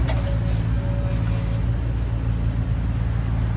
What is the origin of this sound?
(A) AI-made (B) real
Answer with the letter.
B